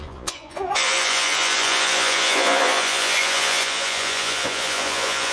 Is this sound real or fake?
fake